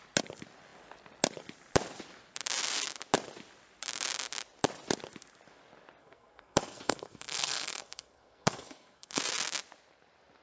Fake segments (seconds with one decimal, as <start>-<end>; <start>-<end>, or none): 6.0-9.2